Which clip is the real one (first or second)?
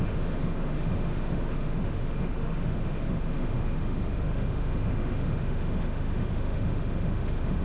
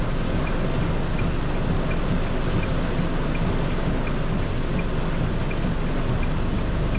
second